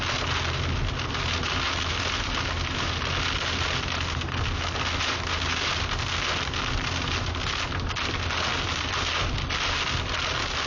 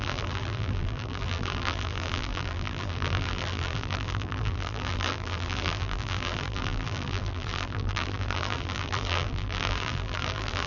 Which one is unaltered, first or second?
first